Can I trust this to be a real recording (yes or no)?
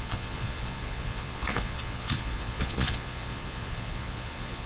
no